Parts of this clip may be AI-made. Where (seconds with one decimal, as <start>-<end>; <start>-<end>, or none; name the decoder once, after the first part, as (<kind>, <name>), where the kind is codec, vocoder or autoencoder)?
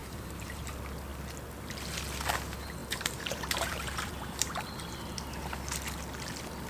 0.0-0.6 (vocoder, BigVGAN v2); 2.8-4.5